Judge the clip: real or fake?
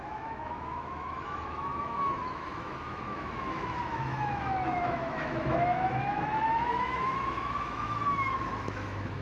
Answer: fake